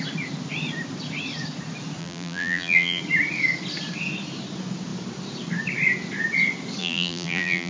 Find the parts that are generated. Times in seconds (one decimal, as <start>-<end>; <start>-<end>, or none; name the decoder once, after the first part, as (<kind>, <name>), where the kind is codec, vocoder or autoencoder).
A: 2.0-3.0 (vocoder, BigVGAN v2); 6.8-7.7